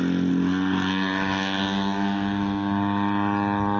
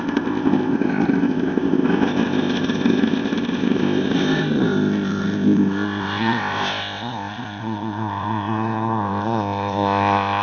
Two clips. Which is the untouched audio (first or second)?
first